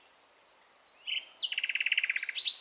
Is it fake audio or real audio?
real